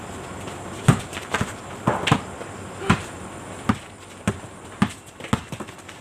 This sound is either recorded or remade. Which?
recorded